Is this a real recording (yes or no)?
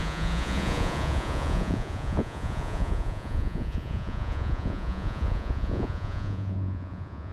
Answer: no